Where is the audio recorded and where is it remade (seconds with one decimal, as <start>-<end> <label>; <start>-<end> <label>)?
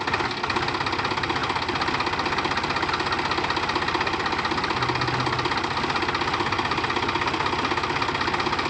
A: 0.0-8.7 recorded